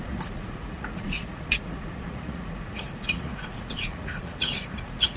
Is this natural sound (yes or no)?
no